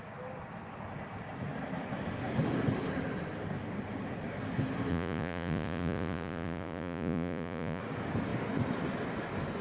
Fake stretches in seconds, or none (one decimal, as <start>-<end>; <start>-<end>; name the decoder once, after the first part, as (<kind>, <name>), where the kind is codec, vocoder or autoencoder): 4.9-7.8 (vocoder, Vocos)